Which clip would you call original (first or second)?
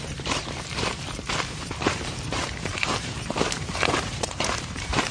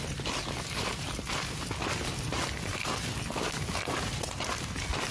second